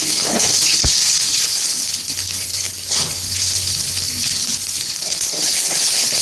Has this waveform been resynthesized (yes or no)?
yes